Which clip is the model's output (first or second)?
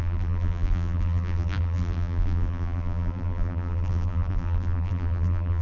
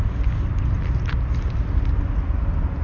first